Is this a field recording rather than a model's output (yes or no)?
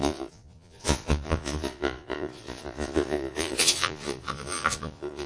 no